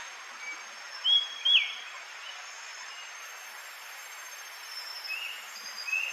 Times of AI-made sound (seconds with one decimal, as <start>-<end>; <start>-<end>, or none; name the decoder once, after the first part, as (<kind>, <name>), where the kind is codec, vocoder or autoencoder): none